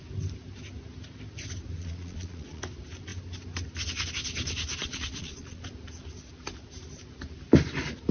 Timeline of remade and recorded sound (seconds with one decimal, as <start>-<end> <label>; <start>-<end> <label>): 0.0-1.8 recorded; 1.8-2.6 remade; 2.6-4.8 recorded; 4.8-5.6 remade; 5.6-8.1 recorded